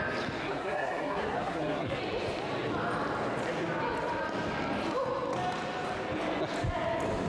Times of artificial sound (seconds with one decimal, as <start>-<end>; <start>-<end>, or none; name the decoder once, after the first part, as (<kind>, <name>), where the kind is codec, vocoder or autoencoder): 0.4-2.0 (codec, SNAC)